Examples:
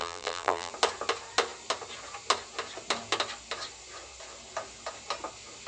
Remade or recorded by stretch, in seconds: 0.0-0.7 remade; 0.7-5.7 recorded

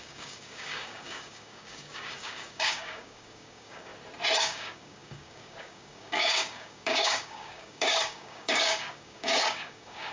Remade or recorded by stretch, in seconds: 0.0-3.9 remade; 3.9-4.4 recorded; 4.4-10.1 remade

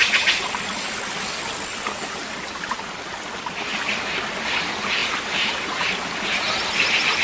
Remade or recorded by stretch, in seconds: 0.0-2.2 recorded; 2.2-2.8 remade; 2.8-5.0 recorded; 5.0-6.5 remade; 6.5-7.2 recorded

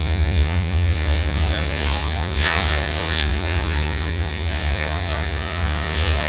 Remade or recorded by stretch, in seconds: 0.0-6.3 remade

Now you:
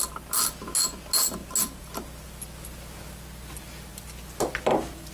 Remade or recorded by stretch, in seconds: 0.0-5.1 recorded

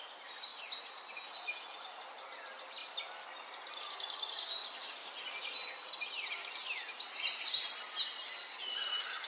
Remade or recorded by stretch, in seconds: 0.0-9.3 recorded